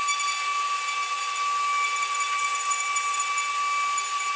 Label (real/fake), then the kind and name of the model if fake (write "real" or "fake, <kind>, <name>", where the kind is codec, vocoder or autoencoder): real